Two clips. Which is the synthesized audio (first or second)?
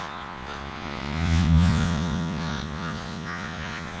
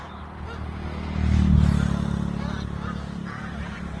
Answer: first